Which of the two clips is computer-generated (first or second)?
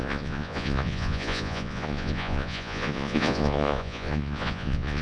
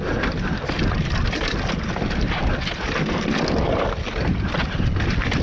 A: first